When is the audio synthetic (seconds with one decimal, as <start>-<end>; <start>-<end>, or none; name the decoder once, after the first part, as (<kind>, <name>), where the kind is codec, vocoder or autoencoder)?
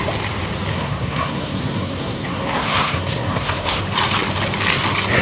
0.7-3.8 (codec, SNAC)